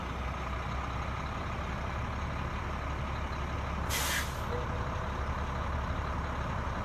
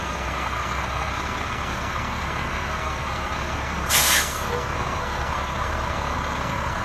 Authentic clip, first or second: first